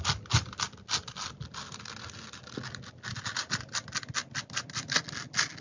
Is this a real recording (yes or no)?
yes